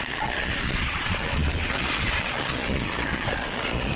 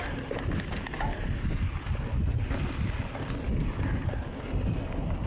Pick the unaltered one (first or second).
second